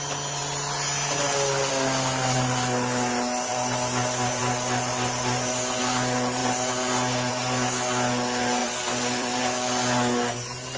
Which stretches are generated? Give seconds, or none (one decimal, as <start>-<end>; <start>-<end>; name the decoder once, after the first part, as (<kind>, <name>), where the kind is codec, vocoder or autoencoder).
3.5-4.4 (vocoder, BigVGAN v2); 8.6-9.4

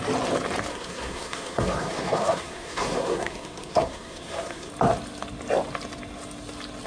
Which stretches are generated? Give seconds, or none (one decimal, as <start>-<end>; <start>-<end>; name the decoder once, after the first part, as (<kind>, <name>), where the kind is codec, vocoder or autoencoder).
0.7-4.7 (codec, SNAC)

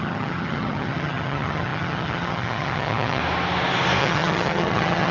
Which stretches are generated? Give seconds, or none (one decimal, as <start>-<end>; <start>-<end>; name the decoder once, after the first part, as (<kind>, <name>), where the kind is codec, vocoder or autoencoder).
0.0-3.2 (vocoder, HiFi-GAN); 4.0-5.1

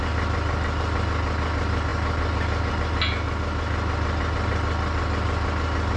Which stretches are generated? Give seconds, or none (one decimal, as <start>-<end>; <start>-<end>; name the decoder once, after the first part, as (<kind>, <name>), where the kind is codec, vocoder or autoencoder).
none

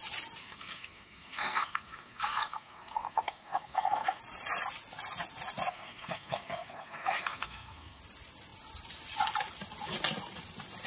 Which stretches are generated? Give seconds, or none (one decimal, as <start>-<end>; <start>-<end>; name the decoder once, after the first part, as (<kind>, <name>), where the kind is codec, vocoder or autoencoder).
0.4-4.2 (codec, SNAC); 5.7-8.0